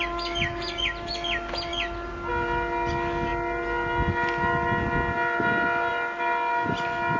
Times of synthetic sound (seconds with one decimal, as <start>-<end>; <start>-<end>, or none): none